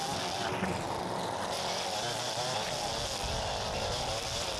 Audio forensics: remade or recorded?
recorded